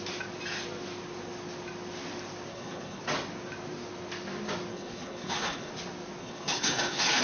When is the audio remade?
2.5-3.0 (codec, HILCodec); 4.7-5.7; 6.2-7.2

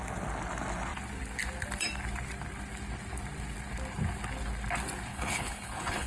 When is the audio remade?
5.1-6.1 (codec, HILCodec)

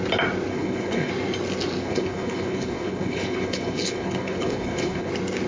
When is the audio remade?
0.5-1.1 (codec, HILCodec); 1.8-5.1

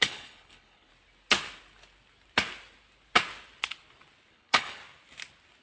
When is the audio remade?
0.0-0.9 (codec, HILCodec); 4.3-4.8

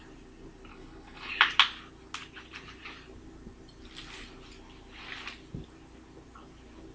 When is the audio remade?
0.7-1.3 (codec, HILCodec)